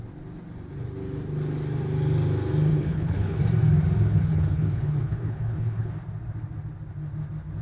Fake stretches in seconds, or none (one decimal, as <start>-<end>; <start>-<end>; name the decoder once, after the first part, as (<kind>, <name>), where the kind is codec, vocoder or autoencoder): 2.7-3.4 (codec, HILCodec); 4.2-5.9